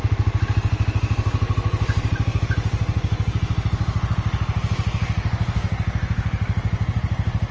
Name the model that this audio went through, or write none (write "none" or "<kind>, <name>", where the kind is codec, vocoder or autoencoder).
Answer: none